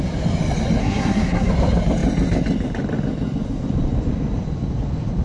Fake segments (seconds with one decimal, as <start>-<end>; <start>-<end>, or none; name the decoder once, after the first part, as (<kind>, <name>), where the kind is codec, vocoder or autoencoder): 0.8-1.5 (codec, SNAC)